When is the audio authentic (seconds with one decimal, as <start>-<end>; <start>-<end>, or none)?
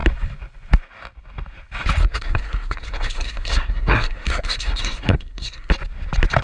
0.0-2.0; 5.7-6.4